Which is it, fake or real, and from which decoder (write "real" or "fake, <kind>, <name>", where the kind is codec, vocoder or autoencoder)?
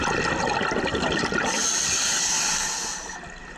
real